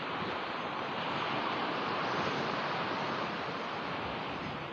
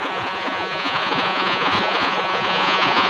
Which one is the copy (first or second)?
second